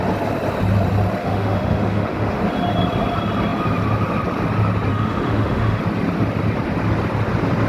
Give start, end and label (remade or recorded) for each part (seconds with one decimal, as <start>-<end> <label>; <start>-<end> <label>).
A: 0.0-1.2 recorded; 1.2-2.4 remade; 2.4-4.9 recorded; 4.9-5.8 remade; 5.8-7.7 recorded